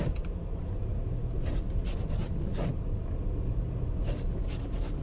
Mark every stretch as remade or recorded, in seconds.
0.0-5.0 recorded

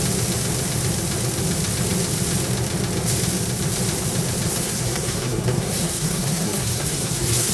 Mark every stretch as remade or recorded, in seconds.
0.0-4.5 recorded; 4.5-7.5 remade

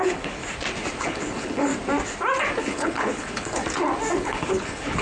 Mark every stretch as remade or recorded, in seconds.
0.0-0.4 remade; 0.4-1.0 recorded; 1.0-1.7 remade; 1.7-2.6 recorded; 2.6-3.6 remade; 3.6-4.2 recorded; 4.2-5.0 remade

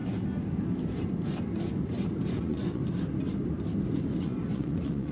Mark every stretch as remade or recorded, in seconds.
0.0-2.3 recorded; 2.3-2.8 remade; 2.8-4.2 recorded; 4.2-5.1 remade

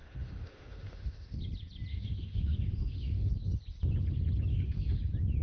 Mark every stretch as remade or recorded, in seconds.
0.0-1.4 remade; 1.4-1.9 recorded; 1.9-3.3 remade; 3.3-4.5 recorded; 4.5-5.0 remade; 5.0-5.4 recorded

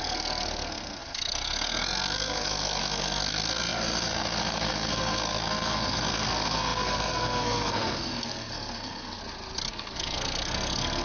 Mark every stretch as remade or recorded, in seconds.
0.0-9.2 remade; 9.2-9.7 recorded; 9.7-11.0 remade

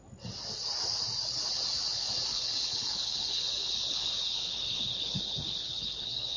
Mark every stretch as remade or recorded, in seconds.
0.0-2.3 recorded; 2.3-6.4 remade

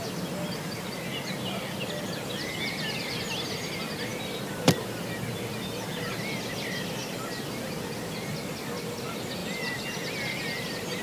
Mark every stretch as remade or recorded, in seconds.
0.0-11.0 recorded